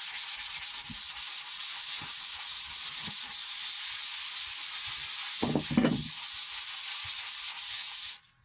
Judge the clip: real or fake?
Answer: real